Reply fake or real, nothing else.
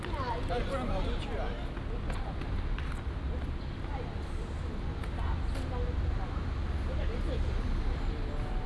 real